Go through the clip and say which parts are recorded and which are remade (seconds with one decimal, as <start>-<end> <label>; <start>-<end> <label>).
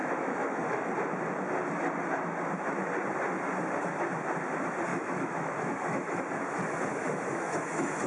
0.0-0.9 remade; 0.9-4.9 recorded; 4.9-6.2 remade; 6.2-6.9 recorded; 6.9-8.1 remade